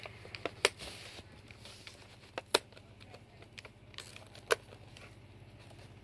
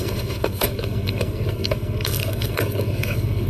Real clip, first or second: first